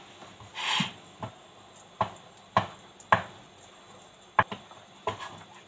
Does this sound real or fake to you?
real